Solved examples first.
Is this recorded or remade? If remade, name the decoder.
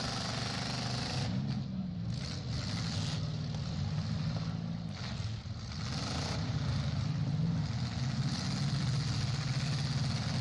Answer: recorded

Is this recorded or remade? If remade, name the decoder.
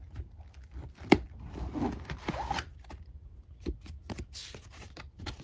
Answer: recorded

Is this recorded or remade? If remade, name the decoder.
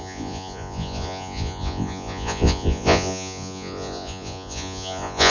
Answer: remade, vocoder, Vocos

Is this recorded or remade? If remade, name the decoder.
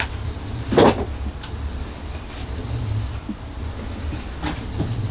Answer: recorded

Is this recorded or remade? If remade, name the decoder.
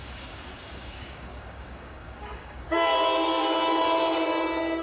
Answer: remade, codec, DAC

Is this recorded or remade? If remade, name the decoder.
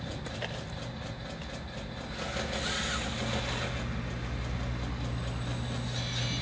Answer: recorded